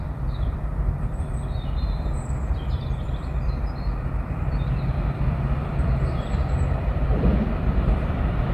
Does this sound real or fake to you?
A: fake